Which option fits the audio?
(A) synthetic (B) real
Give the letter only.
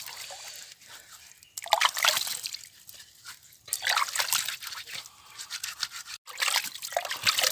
B